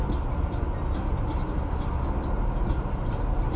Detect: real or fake real